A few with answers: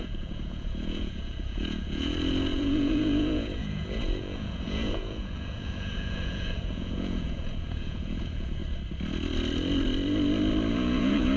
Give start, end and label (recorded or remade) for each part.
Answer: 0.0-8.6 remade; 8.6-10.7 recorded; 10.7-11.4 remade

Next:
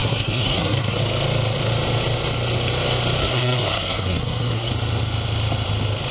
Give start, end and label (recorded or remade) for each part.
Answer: 0.0-1.0 remade; 1.0-3.2 recorded; 3.2-4.7 remade; 4.7-6.1 recorded